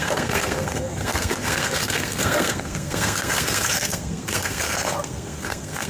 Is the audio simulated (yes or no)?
yes